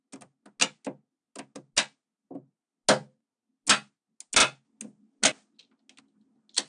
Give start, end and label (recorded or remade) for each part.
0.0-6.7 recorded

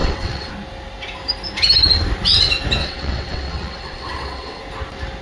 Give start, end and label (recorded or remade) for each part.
0.0-0.5 remade; 0.5-2.8 recorded; 2.8-4.6 remade; 4.6-5.2 recorded

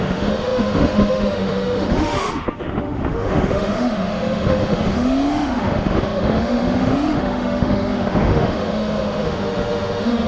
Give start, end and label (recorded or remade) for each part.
0.0-10.3 remade

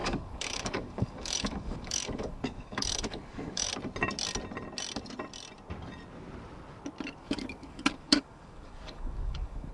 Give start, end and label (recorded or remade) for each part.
0.0-3.7 remade; 3.7-7.2 recorded; 7.2-9.7 remade

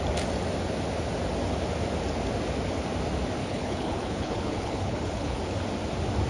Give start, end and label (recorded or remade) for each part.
0.0-3.4 recorded; 3.4-5.4 remade; 5.4-6.3 recorded

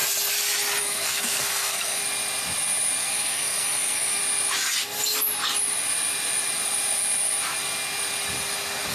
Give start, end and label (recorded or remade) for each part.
0.0-0.8 recorded; 0.8-2.0 remade; 2.0-3.0 recorded; 3.0-4.2 remade; 4.2-8.9 recorded

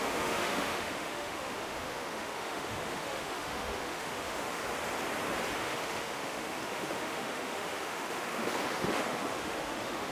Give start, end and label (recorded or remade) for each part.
0.0-4.6 remade; 4.6-5.6 recorded; 5.6-10.1 remade

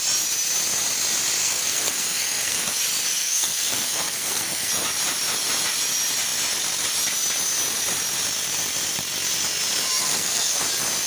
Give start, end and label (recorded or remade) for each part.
0.0-1.4 recorded; 1.4-2.8 remade; 2.8-3.2 recorded; 3.2-4.7 remade; 4.7-10.0 recorded; 10.0-10.6 remade; 10.6-11.1 recorded